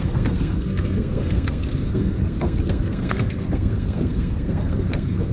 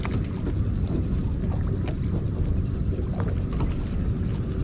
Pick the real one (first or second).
second